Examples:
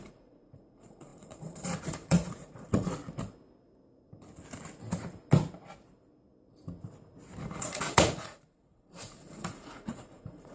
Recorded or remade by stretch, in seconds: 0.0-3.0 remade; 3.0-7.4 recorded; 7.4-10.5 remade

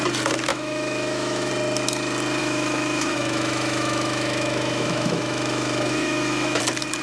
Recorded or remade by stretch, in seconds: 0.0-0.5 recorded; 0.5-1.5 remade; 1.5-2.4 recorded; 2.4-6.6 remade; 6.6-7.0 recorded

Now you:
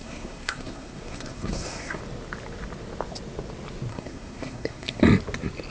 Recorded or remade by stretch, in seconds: 0.0-2.0 remade; 2.0-3.9 recorded; 3.9-5.0 remade; 5.0-5.7 recorded

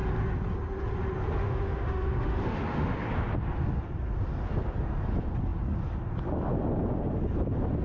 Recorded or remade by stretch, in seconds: 0.0-1.4 recorded; 1.4-3.0 remade; 3.0-7.8 recorded

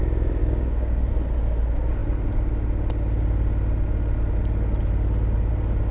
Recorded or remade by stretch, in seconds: 0.0-0.4 recorded; 0.4-1.1 remade; 1.1-5.9 recorded